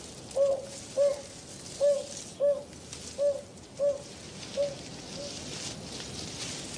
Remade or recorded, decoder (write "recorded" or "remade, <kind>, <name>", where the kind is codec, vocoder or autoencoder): recorded